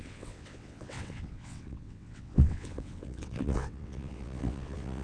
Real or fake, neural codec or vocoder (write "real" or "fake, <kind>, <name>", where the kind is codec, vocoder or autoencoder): fake, vocoder, WaveNeXt